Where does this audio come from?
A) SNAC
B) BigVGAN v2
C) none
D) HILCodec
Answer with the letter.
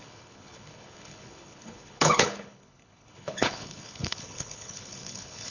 D